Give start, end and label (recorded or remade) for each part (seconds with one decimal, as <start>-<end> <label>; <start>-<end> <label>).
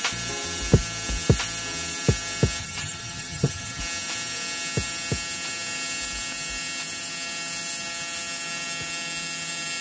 0.0-2.6 recorded; 2.6-3.8 remade; 3.8-9.8 recorded